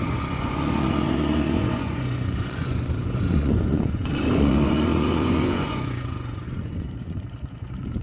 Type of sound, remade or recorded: remade